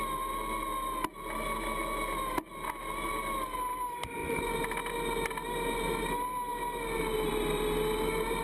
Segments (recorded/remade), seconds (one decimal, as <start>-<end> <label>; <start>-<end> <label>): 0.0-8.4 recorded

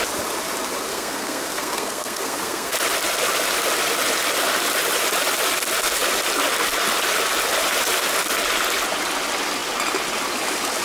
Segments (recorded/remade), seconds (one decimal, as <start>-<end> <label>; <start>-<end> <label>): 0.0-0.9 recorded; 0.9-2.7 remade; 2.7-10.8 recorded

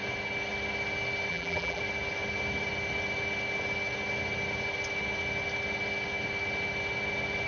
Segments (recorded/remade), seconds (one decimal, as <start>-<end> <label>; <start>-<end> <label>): 0.0-1.3 recorded; 1.3-1.8 remade; 1.8-7.5 recorded